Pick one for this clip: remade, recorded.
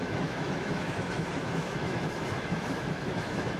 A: remade